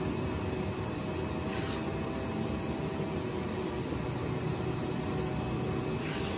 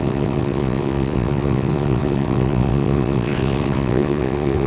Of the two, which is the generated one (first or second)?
second